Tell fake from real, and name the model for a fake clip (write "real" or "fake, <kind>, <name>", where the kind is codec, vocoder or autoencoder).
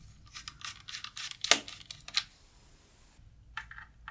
real